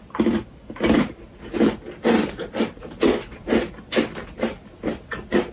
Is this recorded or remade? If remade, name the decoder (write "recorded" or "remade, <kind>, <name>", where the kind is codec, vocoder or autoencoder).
recorded